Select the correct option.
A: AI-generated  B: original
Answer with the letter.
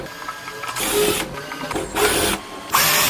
B